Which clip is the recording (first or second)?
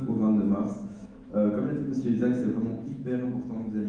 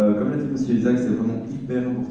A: second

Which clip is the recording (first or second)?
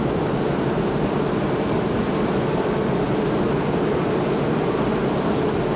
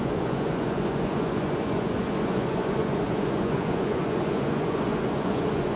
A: first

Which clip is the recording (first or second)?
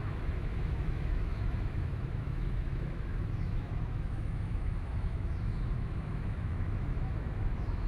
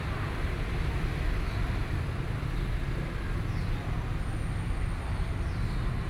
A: second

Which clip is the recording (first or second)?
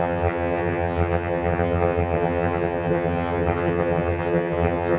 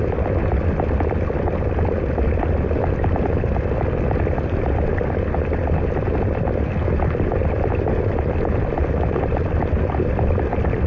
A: second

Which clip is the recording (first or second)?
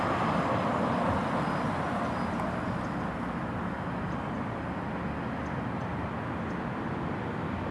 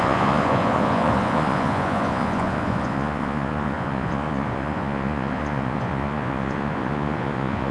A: first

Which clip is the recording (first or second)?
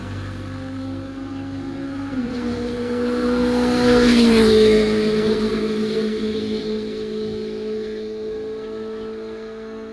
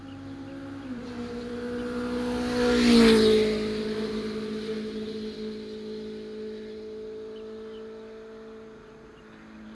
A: second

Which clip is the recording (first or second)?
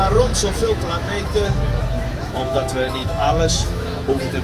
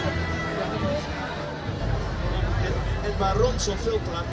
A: second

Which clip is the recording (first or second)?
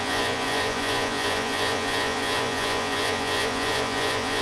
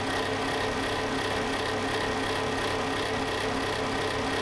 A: second